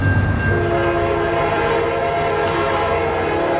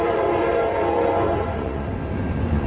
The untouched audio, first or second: first